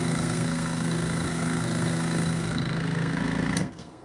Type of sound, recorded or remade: remade